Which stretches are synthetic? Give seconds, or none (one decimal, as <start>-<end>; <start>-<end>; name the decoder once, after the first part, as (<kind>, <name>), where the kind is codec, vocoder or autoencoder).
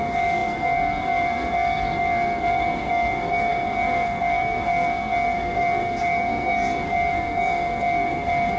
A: 0.0-8.6 (codec, SNAC)